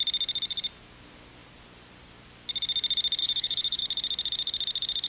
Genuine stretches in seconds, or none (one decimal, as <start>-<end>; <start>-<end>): 0.0-3.2; 3.8-5.1